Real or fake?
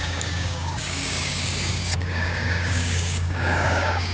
fake